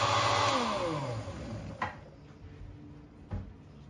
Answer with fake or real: real